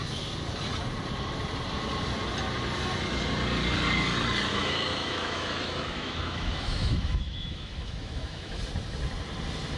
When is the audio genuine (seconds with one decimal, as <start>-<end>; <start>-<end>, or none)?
0.0-4.5; 8.6-9.8